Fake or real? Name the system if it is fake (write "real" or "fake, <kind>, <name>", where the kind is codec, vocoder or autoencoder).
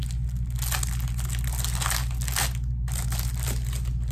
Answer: real